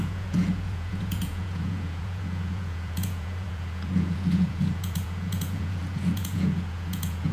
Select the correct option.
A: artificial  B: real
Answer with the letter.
A